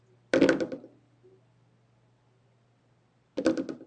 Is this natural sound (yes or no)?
yes